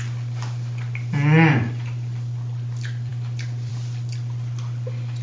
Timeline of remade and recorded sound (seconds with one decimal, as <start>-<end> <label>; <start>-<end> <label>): 0.0-5.2 recorded